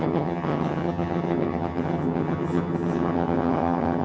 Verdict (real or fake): fake